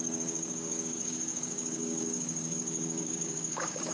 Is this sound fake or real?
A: fake